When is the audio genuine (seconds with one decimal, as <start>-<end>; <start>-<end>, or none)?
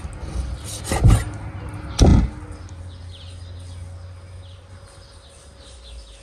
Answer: 0.0-6.2